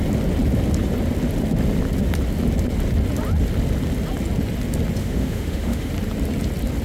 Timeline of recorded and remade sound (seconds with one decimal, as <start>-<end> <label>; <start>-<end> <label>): 0.0-5.0 recorded; 5.0-5.9 remade; 5.9-6.8 recorded